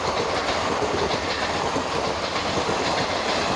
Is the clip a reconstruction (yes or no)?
no